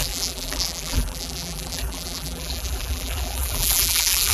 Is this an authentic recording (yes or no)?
no